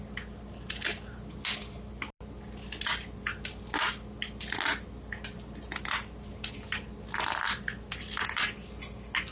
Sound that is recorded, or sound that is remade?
recorded